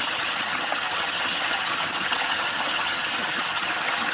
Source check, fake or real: fake